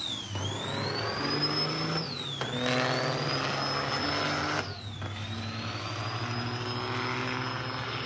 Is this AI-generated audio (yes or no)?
no